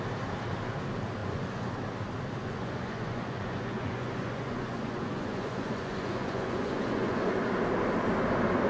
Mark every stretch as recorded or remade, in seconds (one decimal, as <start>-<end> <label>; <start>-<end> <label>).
0.0-1.2 recorded; 1.2-1.7 remade; 1.7-2.4 recorded; 2.4-7.4 remade; 7.4-8.7 recorded